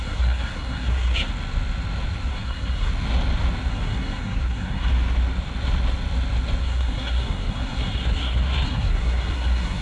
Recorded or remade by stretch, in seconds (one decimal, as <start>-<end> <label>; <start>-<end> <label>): 0.0-1.3 remade; 1.3-2.3 recorded; 2.3-2.9 remade; 2.9-3.7 recorded; 3.7-4.9 remade; 4.9-6.6 recorded; 6.6-9.8 remade